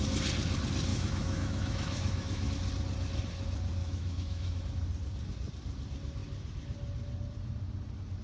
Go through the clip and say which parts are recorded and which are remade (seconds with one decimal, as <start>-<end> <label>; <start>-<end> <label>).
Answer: 0.0-0.9 recorded; 0.9-2.5 remade; 2.5-3.8 recorded; 3.8-4.6 remade; 4.6-8.2 recorded